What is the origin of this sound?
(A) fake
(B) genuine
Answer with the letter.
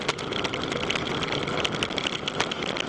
B